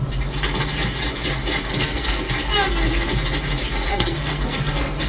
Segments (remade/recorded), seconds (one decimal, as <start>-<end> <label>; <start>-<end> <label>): 0.0-1.7 recorded; 1.7-2.3 remade; 2.3-3.9 recorded; 3.9-5.1 remade